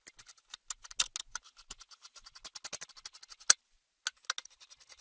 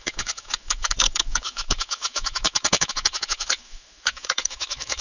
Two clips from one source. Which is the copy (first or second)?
second